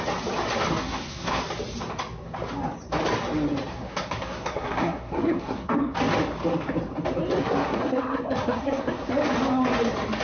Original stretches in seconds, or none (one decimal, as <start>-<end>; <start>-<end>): 0.0-0.8; 1.4-3.7; 5.7-7.4; 9.1-10.2